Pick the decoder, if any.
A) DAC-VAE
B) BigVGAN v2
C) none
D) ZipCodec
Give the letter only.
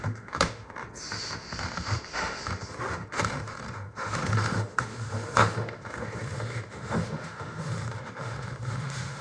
A